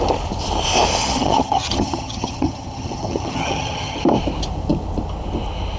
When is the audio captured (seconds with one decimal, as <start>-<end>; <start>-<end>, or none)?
0.0-1.0; 4.0-5.8

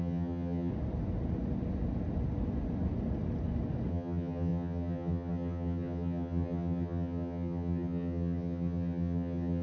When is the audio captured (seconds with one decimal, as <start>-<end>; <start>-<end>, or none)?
0.7-3.9

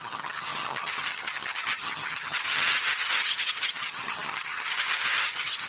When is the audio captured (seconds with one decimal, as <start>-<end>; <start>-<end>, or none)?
none

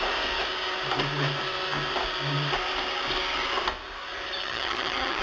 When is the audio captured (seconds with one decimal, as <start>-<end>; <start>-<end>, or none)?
0.0-4.4

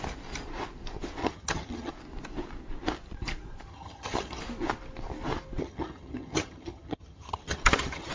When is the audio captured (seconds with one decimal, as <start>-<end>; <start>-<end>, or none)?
0.0-1.2; 1.9-3.7; 4.4-5.6

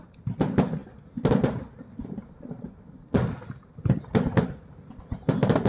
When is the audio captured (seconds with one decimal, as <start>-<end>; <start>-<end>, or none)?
0.0-5.7

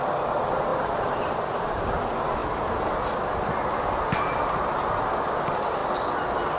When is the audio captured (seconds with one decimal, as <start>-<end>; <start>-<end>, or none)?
0.0-6.6